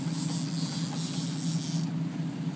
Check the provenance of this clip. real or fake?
real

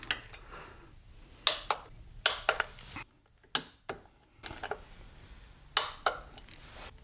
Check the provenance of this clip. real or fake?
real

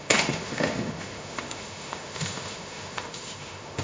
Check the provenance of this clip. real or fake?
fake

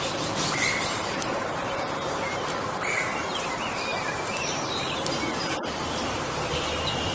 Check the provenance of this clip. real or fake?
fake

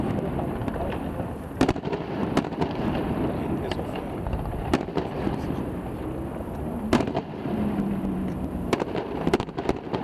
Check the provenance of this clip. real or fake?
fake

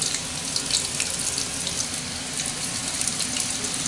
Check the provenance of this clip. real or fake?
real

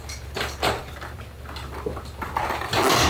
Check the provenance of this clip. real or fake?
real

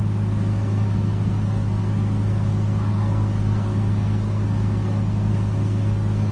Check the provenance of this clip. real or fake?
fake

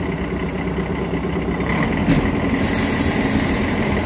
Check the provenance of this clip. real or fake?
real